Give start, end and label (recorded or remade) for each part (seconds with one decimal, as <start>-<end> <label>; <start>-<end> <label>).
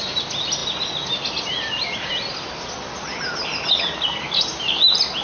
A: 0.0-5.2 recorded